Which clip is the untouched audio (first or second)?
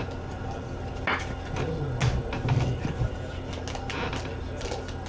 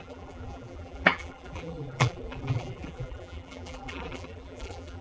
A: first